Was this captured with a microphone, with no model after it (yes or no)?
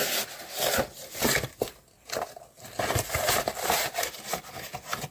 yes